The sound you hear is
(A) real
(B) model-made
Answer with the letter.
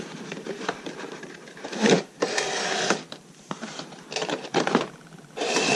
B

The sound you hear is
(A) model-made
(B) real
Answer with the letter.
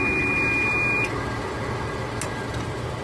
B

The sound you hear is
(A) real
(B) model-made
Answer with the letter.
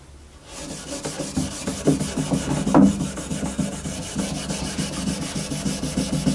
A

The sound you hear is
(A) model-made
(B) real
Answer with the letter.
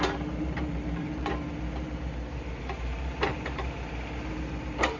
A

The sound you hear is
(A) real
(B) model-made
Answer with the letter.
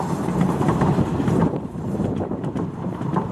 B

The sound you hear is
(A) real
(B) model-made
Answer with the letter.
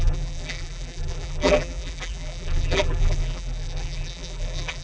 B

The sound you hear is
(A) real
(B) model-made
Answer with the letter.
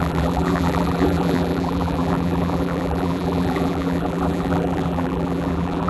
B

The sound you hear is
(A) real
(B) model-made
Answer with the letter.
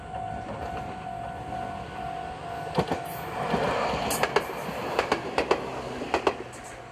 A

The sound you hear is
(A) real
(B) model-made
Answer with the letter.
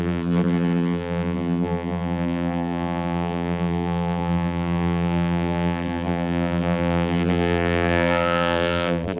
B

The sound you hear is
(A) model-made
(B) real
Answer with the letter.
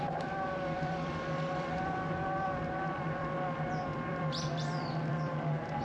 A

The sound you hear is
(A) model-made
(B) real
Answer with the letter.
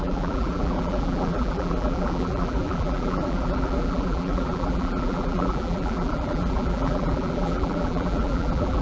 A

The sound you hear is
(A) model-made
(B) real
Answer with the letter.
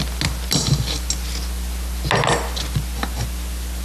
B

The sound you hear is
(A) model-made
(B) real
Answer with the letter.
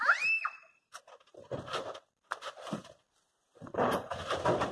A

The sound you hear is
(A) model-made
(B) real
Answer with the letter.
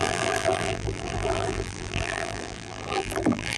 A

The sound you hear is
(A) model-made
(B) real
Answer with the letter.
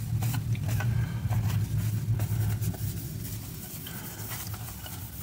B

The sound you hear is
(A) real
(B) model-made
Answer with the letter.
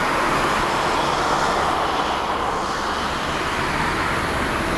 A